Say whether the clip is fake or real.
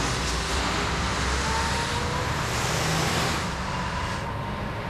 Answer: real